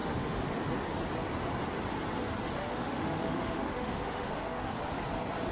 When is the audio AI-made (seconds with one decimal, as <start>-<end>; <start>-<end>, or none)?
0.0-0.6; 2.6-4.8